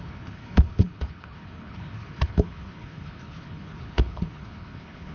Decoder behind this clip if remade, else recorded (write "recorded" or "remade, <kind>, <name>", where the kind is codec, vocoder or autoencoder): remade, codec, HILCodec